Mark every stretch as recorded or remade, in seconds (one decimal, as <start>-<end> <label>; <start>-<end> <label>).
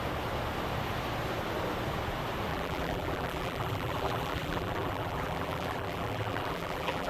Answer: 0.0-2.5 recorded; 2.5-7.1 remade